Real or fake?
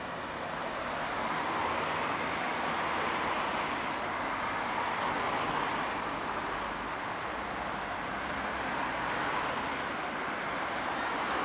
real